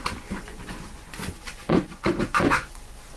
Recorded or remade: remade